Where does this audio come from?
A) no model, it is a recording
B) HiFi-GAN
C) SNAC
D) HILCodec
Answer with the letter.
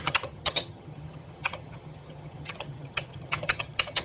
B